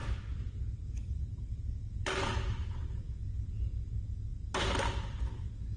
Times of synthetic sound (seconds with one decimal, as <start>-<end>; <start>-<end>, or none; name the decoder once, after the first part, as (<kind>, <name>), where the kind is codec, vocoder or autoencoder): 0.0-3.5 (vocoder, BigVGAN v2)